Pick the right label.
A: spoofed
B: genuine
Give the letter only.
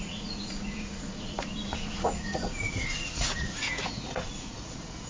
A